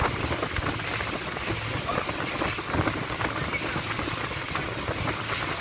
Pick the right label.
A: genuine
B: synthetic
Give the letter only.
A